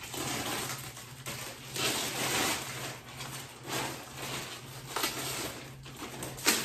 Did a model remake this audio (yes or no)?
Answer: no